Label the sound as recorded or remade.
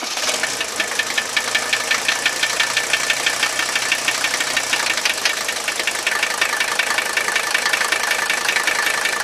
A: recorded